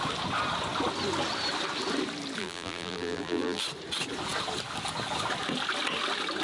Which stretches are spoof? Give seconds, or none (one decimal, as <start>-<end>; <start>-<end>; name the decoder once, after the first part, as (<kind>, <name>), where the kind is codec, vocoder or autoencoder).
2.4-3.6 (vocoder, BigVGAN v2)